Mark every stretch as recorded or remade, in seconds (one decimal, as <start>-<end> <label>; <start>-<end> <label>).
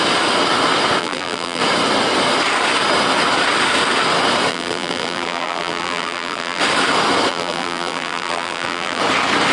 0.0-1.0 recorded; 1.0-1.6 remade; 1.6-4.5 recorded; 4.5-6.6 remade; 6.6-7.3 recorded; 7.3-9.0 remade; 9.0-9.5 recorded